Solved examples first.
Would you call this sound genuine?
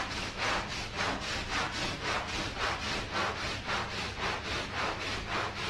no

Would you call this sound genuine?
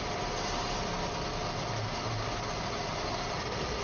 yes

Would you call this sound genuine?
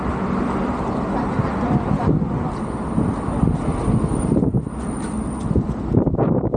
yes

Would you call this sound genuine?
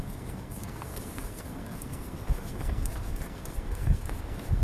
no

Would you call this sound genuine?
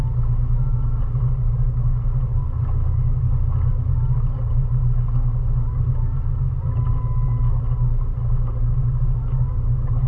yes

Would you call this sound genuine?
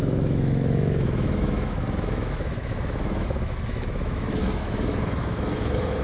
no